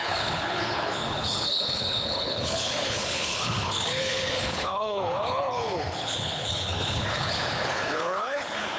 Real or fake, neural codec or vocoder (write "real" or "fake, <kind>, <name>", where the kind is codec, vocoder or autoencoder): fake, codec, HILCodec